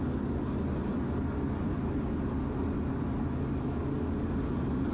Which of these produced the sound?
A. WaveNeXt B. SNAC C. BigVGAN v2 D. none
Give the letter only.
D